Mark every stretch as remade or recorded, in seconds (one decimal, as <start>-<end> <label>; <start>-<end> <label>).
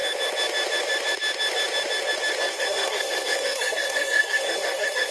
0.0-2.5 recorded; 2.5-5.1 remade